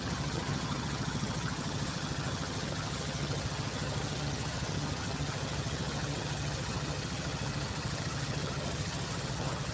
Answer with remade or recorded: remade